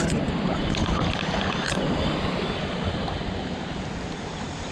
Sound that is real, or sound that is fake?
real